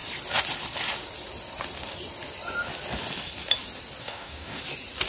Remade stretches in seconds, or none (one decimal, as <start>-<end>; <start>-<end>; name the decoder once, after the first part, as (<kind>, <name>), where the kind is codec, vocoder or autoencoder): 4.0-4.6 (codec, DAC)